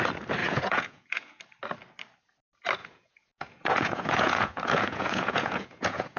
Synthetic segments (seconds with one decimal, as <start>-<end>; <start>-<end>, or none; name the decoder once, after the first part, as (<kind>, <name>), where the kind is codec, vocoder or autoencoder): 0.4-1.4 (vocoder, Vocos); 2.8-6.2